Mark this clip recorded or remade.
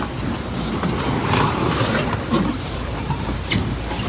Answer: recorded